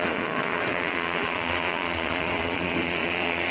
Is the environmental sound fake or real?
fake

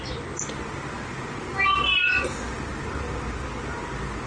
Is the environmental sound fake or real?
real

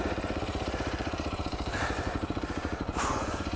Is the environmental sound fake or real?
fake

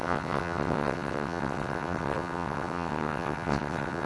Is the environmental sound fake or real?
fake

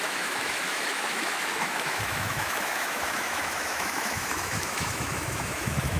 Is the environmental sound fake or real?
fake